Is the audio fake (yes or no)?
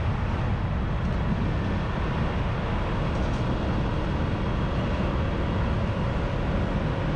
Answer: no